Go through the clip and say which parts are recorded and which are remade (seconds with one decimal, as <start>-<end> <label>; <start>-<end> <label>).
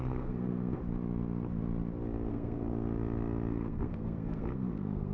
0.0-0.8 remade; 0.8-2.3 recorded; 2.3-2.7 remade; 2.7-3.5 recorded; 3.5-5.1 remade